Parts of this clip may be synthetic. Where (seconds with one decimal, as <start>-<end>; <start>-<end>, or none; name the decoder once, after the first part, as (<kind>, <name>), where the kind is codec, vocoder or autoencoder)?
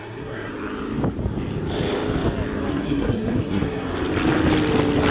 0.0-0.5 (codec, SNAC); 2.7-3.9